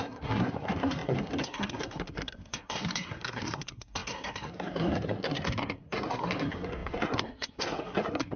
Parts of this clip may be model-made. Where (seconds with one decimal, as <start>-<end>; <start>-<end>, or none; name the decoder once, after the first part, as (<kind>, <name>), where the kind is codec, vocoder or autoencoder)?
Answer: 0.0-8.4 (codec, SNAC)